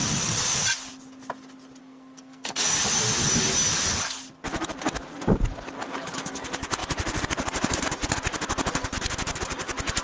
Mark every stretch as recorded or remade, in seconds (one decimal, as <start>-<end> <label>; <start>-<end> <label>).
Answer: 0.0-1.8 recorded; 1.8-2.6 remade; 2.6-10.0 recorded